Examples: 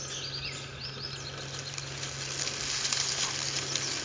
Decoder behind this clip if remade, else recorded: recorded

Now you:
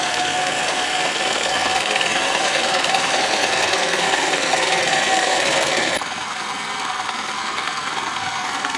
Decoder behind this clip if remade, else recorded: remade, codec, SNAC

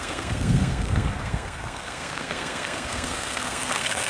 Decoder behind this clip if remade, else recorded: remade, codec, SNAC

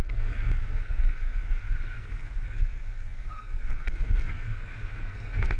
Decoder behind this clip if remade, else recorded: remade, codec, SNAC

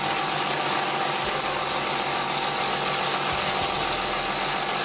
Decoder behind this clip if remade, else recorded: recorded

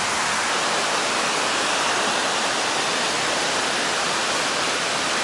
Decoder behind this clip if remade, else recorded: recorded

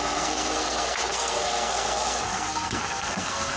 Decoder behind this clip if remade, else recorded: remade, codec, SNAC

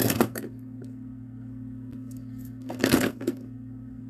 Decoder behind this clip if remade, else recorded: remade, codec, SNAC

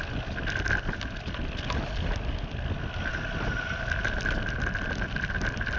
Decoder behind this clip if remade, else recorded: recorded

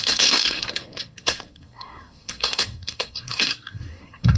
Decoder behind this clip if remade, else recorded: remade, codec, SNAC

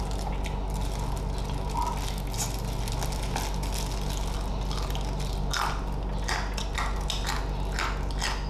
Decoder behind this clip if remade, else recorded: recorded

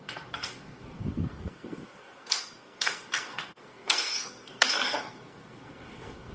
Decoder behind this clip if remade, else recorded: remade, codec, SNAC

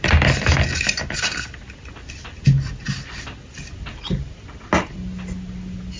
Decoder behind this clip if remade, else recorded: recorded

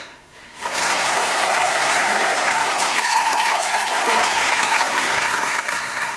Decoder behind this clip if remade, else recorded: remade, codec, SNAC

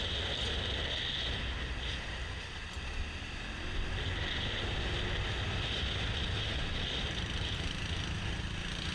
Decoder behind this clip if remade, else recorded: recorded